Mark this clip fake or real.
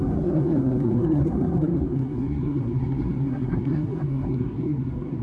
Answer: fake